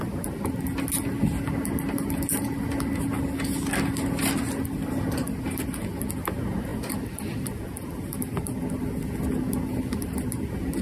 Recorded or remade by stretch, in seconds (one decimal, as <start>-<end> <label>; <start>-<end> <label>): 0.0-6.7 recorded; 6.7-9.0 remade; 9.0-10.8 recorded